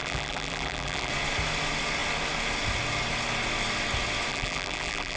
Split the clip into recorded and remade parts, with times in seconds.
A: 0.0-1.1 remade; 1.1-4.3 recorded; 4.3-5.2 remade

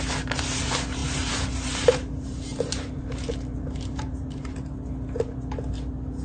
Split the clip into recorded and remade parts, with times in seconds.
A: 0.0-1.0 recorded; 1.0-4.7 remade; 4.7-6.2 recorded

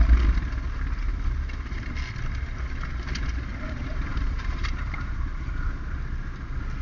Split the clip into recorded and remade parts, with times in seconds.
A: 0.0-3.5 recorded; 3.5-5.8 remade; 5.8-6.8 recorded

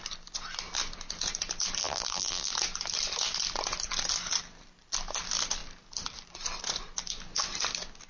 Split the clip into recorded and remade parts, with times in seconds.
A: 0.0-1.8 recorded; 1.8-2.5 remade; 2.5-8.1 recorded

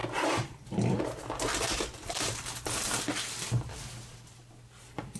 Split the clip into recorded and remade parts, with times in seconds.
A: 0.0-1.0 remade; 1.0-2.0 recorded; 2.0-4.4 remade; 4.4-5.2 recorded

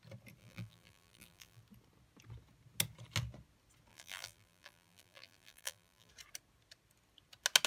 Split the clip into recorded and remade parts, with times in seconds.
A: 0.0-0.4 recorded; 0.4-1.6 remade; 1.6-3.9 recorded; 3.9-6.1 remade; 6.1-7.7 recorded